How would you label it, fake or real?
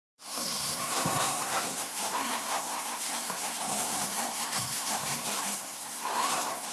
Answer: fake